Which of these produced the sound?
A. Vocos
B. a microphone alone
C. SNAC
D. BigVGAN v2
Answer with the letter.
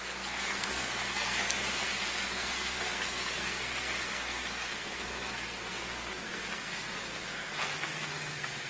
C